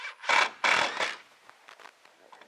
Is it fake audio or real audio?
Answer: real